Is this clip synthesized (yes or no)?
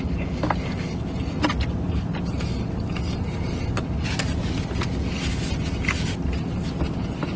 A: no